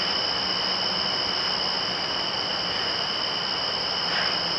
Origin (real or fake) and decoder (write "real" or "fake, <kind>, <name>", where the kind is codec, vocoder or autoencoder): real